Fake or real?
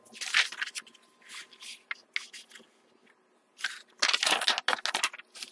real